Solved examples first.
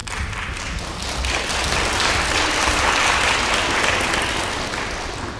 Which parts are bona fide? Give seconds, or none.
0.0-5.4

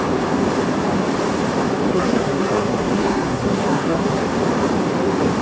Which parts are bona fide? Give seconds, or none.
0.0-1.9; 4.2-5.4

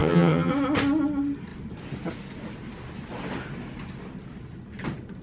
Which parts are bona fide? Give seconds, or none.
0.5-5.2

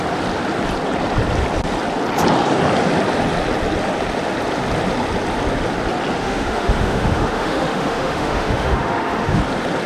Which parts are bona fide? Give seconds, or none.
0.0-6.2; 9.4-9.9

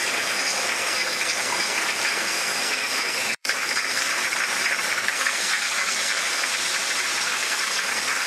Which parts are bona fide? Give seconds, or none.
4.1-4.9; 6.5-7.2

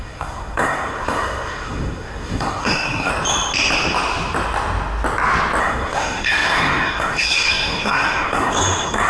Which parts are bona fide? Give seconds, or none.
3.1-5.6

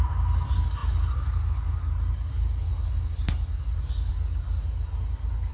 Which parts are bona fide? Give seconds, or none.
0.0-5.5

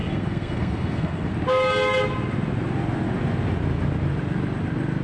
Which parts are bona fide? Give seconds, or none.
1.3-5.0